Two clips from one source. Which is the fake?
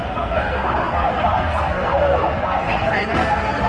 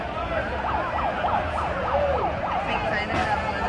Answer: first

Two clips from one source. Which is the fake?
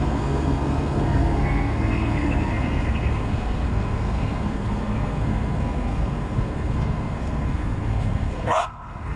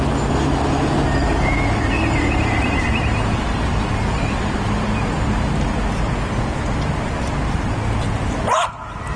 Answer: first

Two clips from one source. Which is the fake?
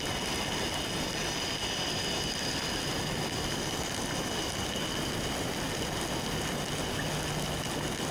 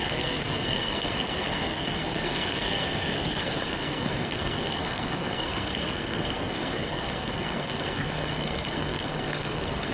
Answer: second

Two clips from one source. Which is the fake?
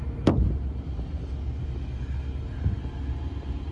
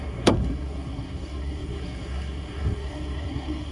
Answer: second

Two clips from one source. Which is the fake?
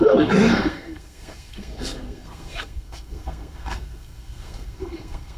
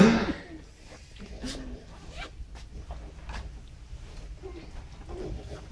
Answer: first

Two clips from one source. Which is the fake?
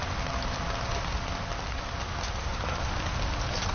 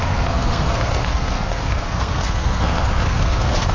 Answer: second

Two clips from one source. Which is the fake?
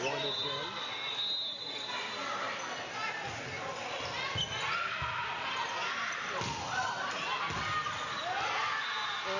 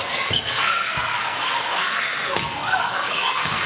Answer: second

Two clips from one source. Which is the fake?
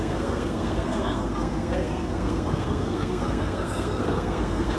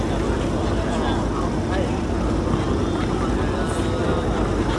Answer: first